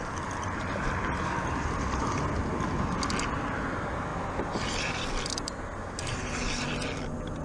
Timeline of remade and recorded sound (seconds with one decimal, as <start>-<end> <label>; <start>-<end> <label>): 0.0-7.4 recorded